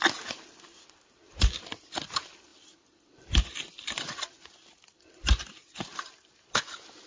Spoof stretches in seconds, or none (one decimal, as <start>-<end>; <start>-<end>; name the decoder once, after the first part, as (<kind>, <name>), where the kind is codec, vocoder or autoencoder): 2.5-5.5 (vocoder, BigVGAN v2)